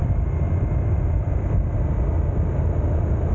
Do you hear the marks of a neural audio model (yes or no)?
no